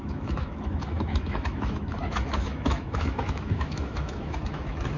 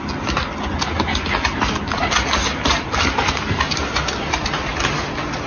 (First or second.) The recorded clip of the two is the second